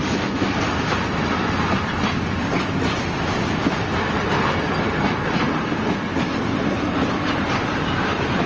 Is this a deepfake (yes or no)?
no